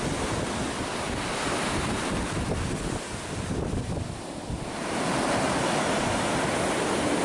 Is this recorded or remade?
recorded